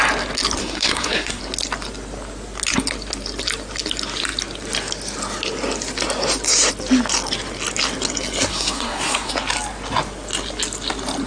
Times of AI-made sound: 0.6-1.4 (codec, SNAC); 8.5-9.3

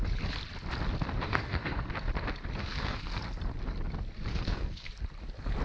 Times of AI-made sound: 1.3-1.9 (codec, SNAC); 2.6-3.2; 4.3-4.9

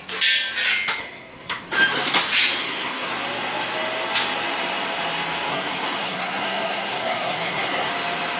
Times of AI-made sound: 1.0-1.7 (codec, SNAC); 2.6-3.1; 5.5-7.9

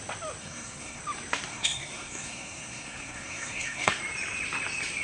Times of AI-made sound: 0.4-1.0 (codec, SNAC); 1.5-4.0

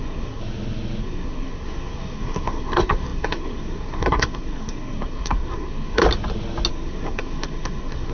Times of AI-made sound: 0.0-0.4 (codec, SNAC); 1.0-6.0; 6.7-8.1

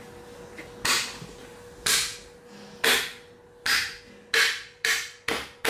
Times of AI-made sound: none